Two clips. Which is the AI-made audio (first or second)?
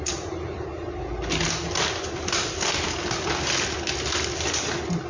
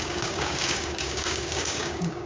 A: second